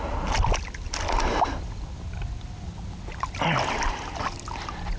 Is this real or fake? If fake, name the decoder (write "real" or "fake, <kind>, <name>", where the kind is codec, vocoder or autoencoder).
real